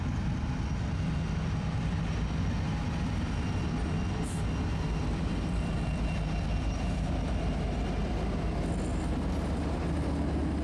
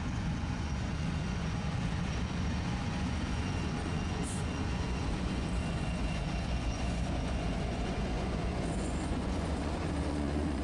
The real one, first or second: first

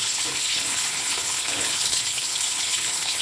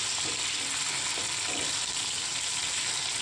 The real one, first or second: second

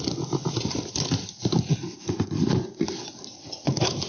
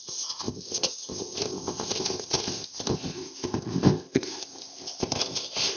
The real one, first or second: first